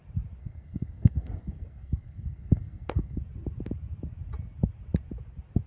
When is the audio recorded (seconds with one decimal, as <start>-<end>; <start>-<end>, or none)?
0.0-0.4; 3.2-5.7